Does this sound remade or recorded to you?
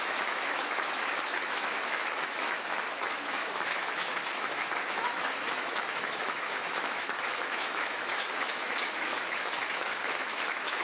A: remade